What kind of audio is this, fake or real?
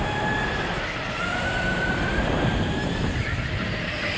real